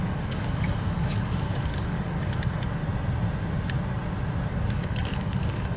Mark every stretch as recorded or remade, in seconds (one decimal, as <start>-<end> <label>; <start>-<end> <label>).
0.0-2.8 remade; 2.8-4.5 recorded; 4.5-5.8 remade